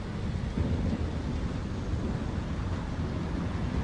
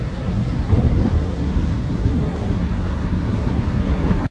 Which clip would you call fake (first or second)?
second